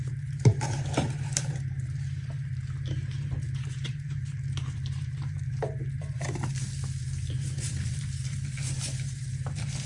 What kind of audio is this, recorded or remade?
remade